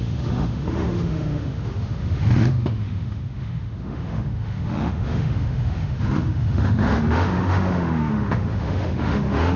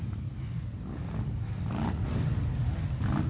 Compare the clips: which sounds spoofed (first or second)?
first